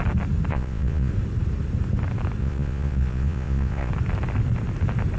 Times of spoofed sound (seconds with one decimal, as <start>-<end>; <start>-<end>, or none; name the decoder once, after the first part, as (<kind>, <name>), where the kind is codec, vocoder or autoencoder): 0.5-1.1 (vocoder, Vocos); 2.4-3.9